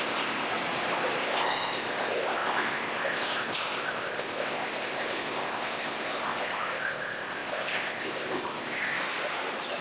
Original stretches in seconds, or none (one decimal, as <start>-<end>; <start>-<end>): 0.5-1.2; 9.0-9.8